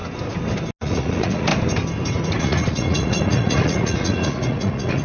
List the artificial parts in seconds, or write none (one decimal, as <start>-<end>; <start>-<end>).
0.8-1.5; 2.4-5.0